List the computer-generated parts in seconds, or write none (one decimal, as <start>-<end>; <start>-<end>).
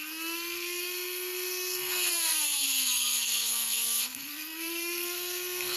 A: 0.0-5.8